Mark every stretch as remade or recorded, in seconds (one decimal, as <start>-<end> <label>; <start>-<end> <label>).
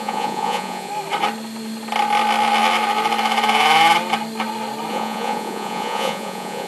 0.0-0.9 remade; 0.9-4.9 recorded; 4.9-6.7 remade